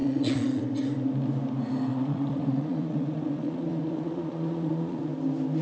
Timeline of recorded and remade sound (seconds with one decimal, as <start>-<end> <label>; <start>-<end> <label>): 0.0-0.6 remade; 0.6-1.9 recorded; 1.9-5.0 remade; 5.0-5.6 recorded